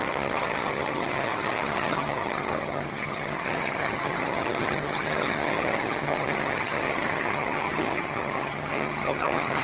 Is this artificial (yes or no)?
yes